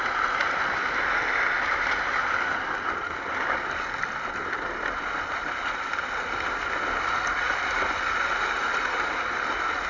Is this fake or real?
real